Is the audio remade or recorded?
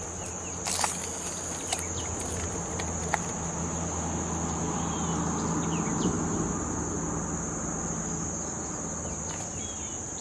recorded